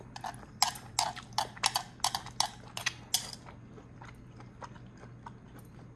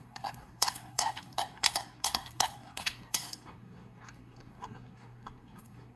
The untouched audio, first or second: first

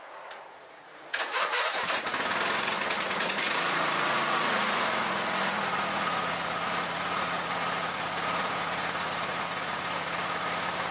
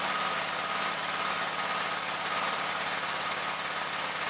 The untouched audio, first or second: second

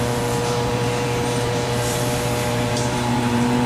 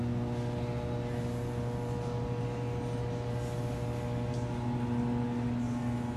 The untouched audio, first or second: second